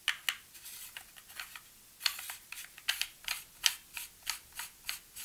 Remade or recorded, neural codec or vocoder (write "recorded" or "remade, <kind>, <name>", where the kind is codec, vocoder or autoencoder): recorded